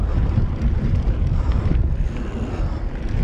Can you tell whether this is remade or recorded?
recorded